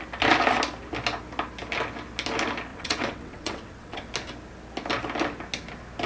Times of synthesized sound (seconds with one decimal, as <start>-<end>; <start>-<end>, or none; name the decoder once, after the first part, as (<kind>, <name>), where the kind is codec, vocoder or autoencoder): 2.7-4.1 (vocoder, WaveNeXt)

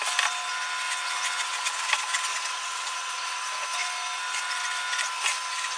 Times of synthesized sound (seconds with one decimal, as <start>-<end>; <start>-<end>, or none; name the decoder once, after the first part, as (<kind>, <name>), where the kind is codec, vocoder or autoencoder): 1.0-1.8 (vocoder, WaveNeXt); 2.3-3.4

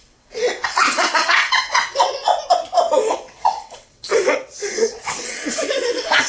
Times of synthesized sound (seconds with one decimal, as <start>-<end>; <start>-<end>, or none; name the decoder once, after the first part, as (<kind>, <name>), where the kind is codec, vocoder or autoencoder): 0.0-2.3 (vocoder, WaveNeXt); 3.1-6.3